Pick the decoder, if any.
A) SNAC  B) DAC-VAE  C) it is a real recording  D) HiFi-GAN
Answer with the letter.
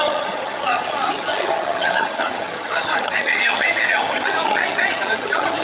D